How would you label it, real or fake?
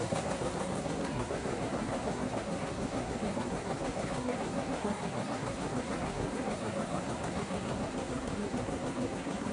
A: fake